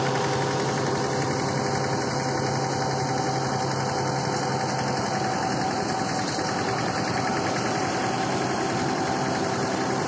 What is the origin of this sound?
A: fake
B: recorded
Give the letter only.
B